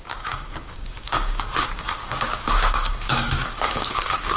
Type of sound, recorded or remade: remade